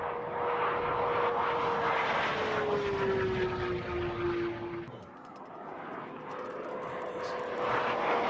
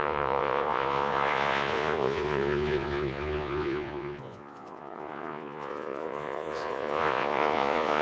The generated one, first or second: second